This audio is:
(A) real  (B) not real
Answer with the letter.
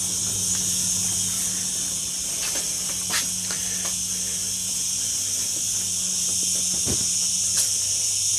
A